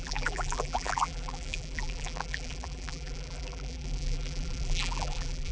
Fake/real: fake